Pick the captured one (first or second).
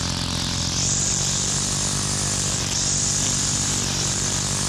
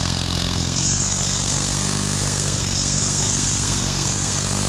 first